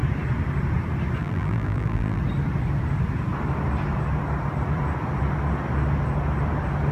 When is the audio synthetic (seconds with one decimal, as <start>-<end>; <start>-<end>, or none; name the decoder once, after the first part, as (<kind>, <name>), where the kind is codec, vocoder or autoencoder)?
1.2-2.2 (vocoder, BigVGAN v2)